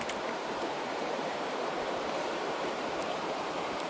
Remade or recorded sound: remade